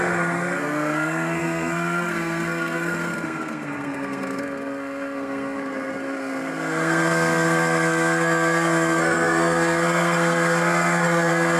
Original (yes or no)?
no